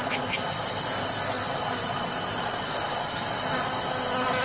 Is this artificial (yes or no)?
no